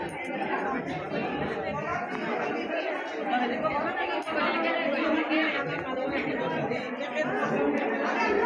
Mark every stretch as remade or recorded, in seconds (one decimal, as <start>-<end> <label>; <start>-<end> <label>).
0.0-8.5 recorded